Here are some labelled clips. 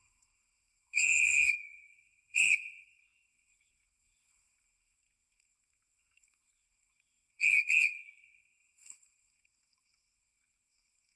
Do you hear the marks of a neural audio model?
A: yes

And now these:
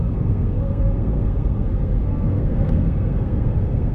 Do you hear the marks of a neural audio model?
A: yes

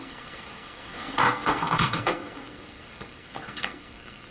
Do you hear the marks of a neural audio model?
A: yes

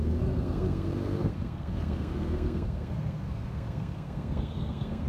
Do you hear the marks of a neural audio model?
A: yes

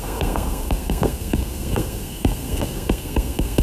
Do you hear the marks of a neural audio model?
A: yes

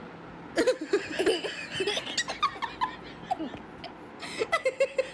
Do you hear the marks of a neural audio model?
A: no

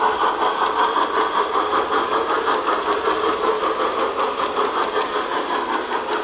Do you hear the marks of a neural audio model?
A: no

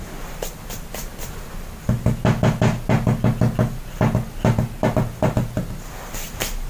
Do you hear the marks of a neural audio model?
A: no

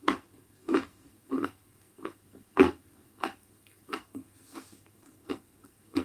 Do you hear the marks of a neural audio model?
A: yes